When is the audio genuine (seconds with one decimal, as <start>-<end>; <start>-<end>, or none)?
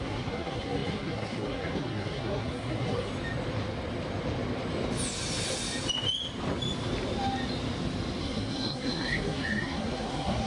3.1-8.2